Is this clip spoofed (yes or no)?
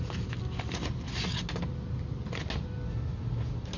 no